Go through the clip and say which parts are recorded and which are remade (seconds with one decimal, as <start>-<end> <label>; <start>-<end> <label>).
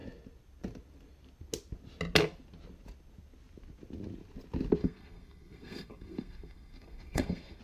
0.0-4.8 recorded; 4.8-7.6 remade